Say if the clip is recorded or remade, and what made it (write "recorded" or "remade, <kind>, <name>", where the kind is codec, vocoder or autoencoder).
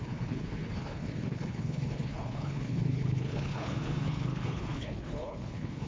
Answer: remade, codec, HILCodec